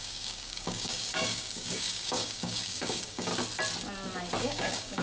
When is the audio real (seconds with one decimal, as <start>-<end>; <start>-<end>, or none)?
3.3-4.4